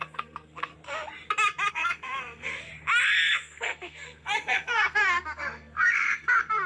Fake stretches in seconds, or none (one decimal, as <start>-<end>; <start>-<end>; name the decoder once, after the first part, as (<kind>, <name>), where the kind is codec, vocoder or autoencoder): 0.0-0.7 (codec, SNAC); 1.7-2.7; 3.4-6.7